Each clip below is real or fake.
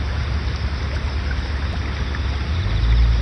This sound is real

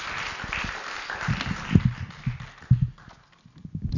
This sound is real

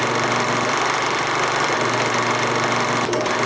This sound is real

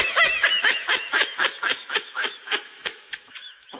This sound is fake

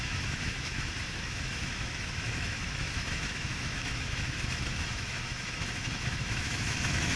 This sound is fake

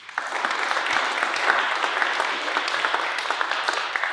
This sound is real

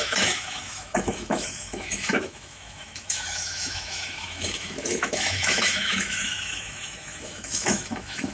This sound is fake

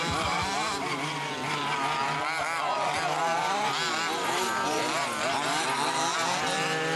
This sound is real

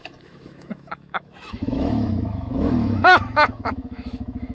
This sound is fake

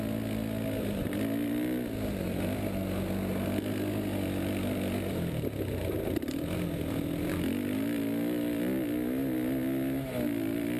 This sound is real